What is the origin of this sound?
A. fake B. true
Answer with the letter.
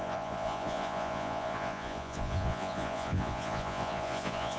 A